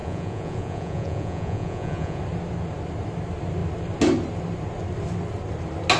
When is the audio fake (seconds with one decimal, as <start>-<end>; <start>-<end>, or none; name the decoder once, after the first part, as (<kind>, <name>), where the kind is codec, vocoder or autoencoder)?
0.0-2.2 (vocoder, Vocos)

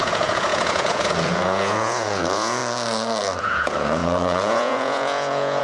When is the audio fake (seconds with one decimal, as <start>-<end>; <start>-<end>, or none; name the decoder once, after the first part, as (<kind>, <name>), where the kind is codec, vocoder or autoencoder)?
0.0-2.6 (vocoder, Vocos); 3.4-5.6

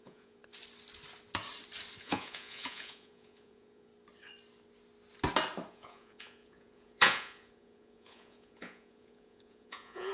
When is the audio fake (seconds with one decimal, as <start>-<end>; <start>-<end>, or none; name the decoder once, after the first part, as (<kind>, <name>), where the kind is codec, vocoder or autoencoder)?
0.0-0.4 (vocoder, Vocos); 2.0-3.9; 5.7-10.1

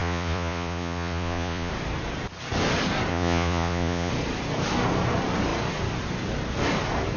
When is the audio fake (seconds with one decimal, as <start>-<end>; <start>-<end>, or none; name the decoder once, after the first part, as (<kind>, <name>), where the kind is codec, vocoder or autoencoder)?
0.0-1.7 (vocoder, Vocos); 3.1-4.1

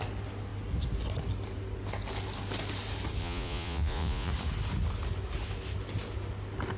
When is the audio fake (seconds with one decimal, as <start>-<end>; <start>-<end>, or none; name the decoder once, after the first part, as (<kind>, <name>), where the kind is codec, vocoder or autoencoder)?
3.2-4.3 (vocoder, Vocos)